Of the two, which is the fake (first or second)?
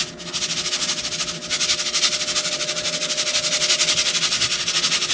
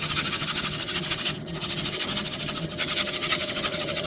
second